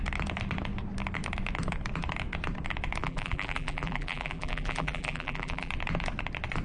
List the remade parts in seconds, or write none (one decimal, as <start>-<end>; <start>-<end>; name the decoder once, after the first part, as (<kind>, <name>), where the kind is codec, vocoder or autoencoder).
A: 3.0-5.7 (vocoder, BigVGAN v2)